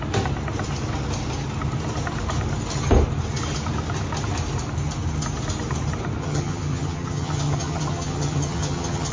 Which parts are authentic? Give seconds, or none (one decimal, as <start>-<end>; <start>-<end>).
0.0-6.2